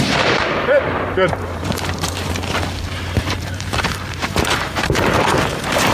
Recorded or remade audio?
remade